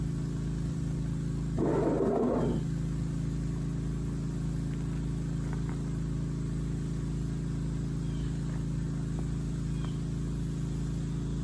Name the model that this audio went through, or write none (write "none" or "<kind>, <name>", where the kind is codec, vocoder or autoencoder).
none